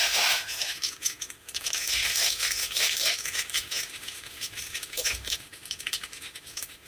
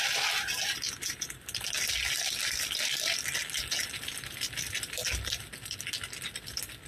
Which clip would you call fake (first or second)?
first